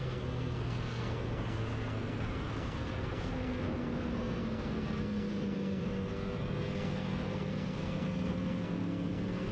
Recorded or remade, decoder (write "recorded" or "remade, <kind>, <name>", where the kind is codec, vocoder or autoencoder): remade, codec, SNAC